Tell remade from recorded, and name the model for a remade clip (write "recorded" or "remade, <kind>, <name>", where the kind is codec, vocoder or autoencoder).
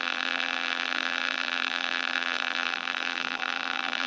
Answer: remade, vocoder, BigVGAN v2